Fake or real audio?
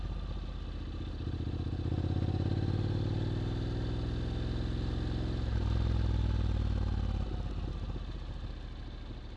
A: real